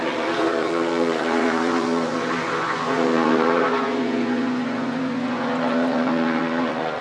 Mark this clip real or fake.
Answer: fake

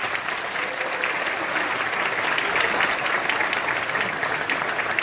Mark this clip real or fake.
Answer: real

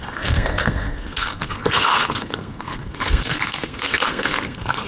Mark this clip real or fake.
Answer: fake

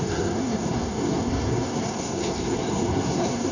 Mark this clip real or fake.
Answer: fake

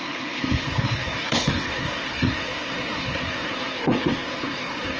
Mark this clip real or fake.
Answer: fake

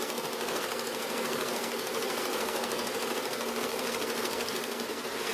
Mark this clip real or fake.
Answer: fake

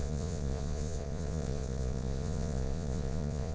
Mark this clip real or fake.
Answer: fake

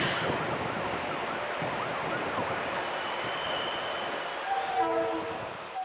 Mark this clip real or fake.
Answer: real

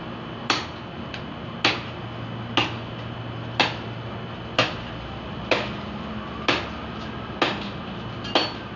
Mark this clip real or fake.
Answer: real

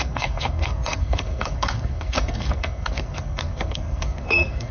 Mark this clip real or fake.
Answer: fake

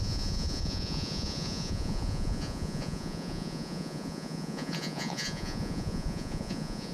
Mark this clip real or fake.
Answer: fake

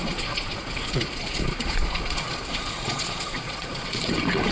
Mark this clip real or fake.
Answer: fake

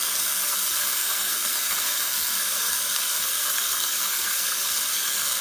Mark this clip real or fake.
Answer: fake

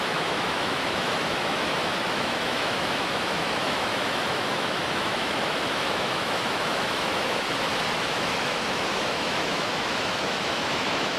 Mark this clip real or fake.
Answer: fake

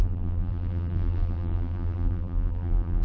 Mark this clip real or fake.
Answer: fake